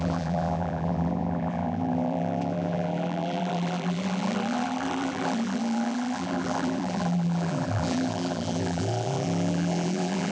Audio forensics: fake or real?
fake